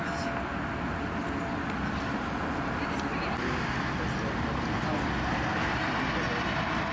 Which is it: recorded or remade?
recorded